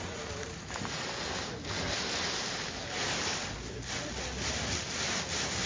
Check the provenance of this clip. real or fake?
real